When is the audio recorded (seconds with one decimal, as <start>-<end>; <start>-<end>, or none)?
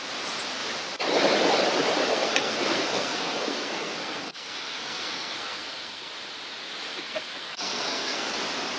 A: 0.0-2.1; 6.1-6.9; 8.3-8.8